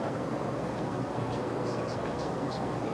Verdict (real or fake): fake